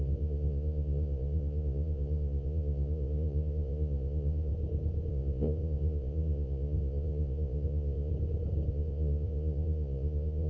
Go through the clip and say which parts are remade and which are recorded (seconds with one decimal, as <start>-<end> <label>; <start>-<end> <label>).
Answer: 0.0-4.5 remade; 4.5-5.1 recorded; 5.1-8.1 remade; 8.1-8.7 recorded; 8.7-10.5 remade